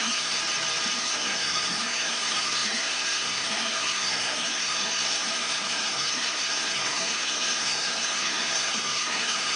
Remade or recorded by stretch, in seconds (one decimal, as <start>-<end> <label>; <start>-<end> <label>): 0.0-0.4 remade; 0.4-1.0 recorded; 1.0-9.6 remade